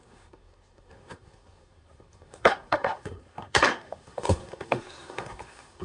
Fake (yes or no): yes